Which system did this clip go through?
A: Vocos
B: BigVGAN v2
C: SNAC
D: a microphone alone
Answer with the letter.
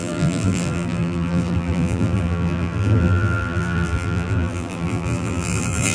B